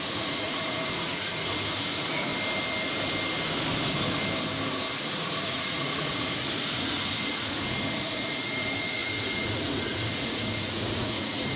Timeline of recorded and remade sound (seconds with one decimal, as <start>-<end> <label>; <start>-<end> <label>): 0.0-2.3 remade; 2.3-4.9 recorded; 4.9-11.6 remade